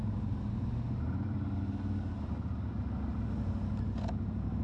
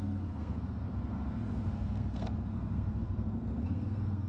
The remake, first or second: second